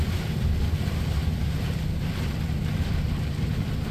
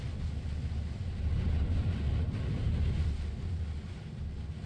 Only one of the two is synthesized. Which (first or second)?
first